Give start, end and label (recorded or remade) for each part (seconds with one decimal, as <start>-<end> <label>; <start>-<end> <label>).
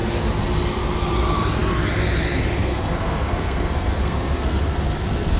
0.0-2.6 recorded; 2.6-4.6 remade; 4.6-5.4 recorded